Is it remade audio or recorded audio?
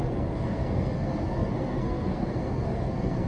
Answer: remade